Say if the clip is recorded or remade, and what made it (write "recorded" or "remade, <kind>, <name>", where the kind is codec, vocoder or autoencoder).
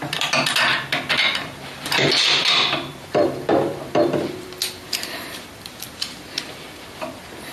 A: remade, vocoder, BigVGAN v2